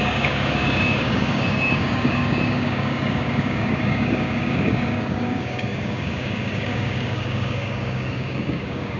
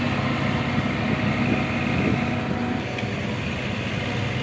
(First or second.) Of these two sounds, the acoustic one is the second